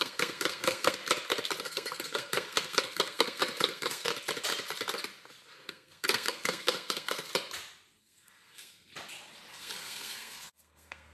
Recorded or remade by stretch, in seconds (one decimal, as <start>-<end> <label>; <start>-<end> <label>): 0.0-1.0 remade; 1.0-1.6 recorded; 1.6-4.1 remade; 4.1-5.5 recorded; 5.5-7.3 remade; 7.3-8.0 recorded; 8.0-8.9 remade; 8.9-9.5 recorded; 9.5-11.1 remade